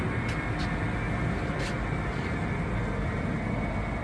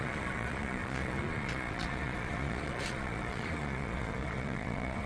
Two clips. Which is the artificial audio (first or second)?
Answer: second